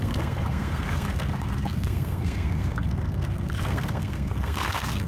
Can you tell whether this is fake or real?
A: fake